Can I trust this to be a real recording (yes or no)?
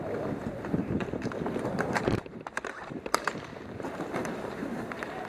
no